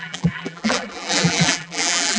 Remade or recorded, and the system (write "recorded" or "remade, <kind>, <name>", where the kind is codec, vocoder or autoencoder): remade, vocoder, BigVGAN v2